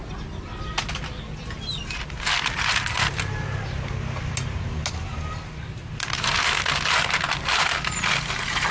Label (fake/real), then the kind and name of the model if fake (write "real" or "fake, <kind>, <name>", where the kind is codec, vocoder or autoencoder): real